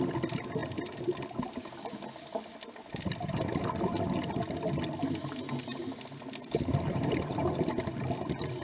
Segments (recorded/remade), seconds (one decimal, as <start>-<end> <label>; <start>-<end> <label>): 0.0-8.6 recorded